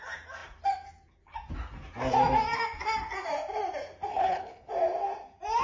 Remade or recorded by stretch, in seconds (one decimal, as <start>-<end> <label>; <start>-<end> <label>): 0.0-4.1 recorded; 4.1-4.7 remade; 4.7-5.6 recorded